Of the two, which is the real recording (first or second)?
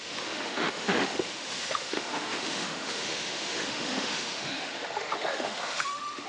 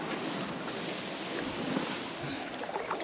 second